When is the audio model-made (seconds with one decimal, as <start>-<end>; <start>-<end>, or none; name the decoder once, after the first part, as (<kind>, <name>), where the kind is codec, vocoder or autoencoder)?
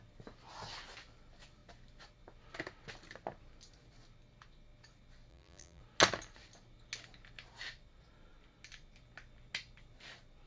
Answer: 5.3-5.8 (vocoder, BigVGAN v2)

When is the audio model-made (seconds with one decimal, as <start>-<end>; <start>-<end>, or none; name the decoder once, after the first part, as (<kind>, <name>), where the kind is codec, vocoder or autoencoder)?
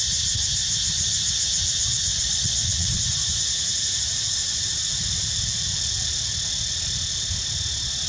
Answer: 2.1-3.0 (vocoder, Vocos)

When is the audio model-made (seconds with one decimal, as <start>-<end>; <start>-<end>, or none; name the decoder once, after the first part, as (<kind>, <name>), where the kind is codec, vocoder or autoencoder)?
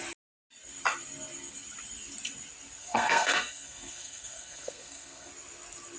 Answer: 2.8-5.3 (codec, SNAC)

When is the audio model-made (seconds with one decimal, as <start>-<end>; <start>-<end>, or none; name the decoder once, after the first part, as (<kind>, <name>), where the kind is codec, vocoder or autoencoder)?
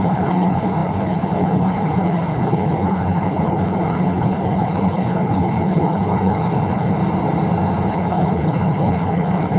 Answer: 0.0-7.0 (codec, HILCodec); 7.9-9.6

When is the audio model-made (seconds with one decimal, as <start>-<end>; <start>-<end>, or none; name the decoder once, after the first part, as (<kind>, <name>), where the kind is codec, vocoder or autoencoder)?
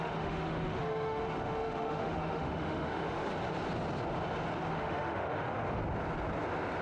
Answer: 0.0-3.3 (autoencoder, DAC-VAE); 4.7-5.8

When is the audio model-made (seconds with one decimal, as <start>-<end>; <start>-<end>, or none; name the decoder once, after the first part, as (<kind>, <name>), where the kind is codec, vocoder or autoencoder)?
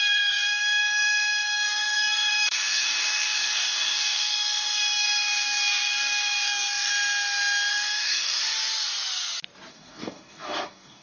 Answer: 0.0-6.9 (codec, DAC); 7.7-8.4; 9.7-11.0